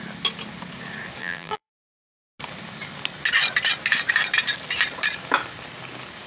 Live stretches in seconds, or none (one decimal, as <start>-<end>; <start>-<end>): 0.0-1.2; 1.7-6.3